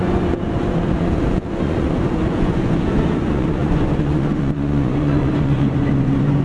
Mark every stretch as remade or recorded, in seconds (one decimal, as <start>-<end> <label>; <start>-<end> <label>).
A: 0.0-6.4 remade